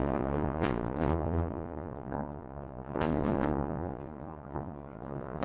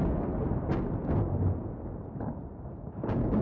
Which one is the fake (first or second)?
first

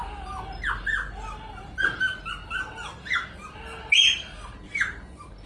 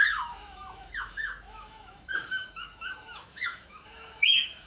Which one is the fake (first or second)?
second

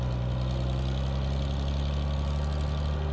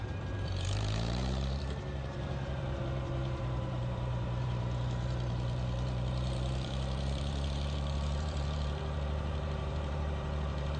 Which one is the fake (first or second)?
second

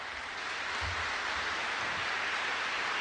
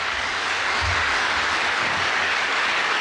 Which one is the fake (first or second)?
second